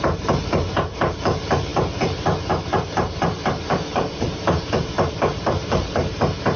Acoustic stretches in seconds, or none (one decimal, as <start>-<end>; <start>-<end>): none